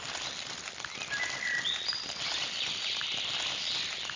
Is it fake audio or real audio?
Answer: fake